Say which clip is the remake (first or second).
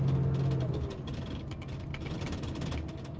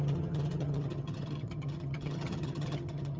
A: second